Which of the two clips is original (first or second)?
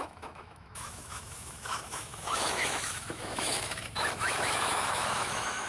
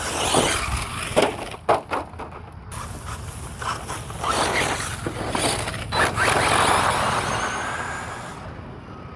second